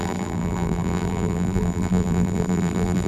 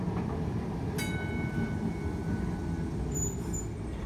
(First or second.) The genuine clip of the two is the second